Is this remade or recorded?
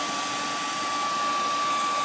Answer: recorded